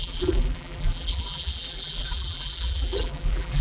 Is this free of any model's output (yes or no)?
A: no